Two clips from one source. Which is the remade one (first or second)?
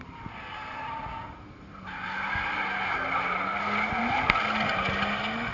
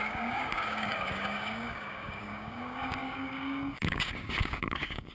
second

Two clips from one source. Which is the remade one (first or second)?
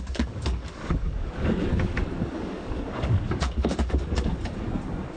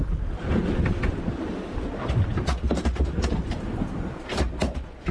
first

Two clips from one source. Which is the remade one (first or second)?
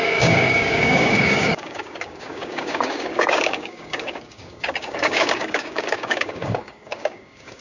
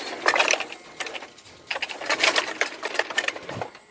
first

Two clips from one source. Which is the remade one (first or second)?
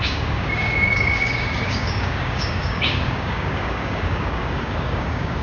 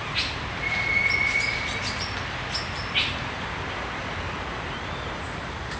first